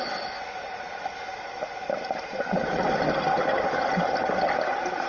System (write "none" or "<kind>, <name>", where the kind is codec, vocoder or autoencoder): none